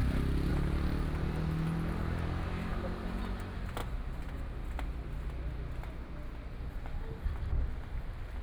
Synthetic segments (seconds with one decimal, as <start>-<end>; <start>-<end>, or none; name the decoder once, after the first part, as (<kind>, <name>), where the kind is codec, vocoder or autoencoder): 0.0-0.5 (vocoder, BigVGAN v2)